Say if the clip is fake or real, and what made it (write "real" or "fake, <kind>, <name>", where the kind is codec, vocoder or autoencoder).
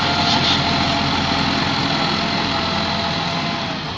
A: real